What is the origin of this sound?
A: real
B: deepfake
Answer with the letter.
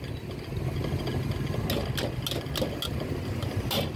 A